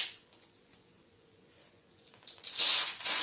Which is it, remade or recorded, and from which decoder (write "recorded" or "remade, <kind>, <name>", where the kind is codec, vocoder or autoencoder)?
remade, vocoder, Vocos